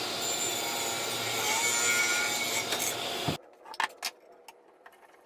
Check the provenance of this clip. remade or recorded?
recorded